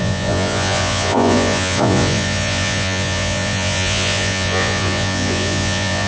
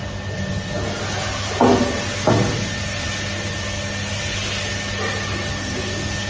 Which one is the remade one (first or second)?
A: first